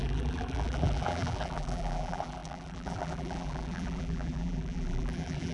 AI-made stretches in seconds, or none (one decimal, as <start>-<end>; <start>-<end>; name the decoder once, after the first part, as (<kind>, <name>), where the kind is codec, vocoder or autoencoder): 0.0-5.5 (vocoder, BigVGAN v2)